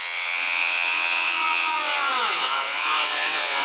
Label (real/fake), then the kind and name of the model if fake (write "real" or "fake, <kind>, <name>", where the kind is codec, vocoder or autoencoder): fake, vocoder, WaveNeXt